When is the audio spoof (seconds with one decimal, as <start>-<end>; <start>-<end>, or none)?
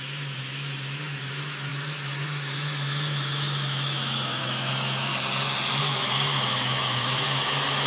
0.0-5.1; 5.8-7.9